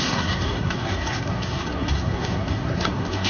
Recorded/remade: remade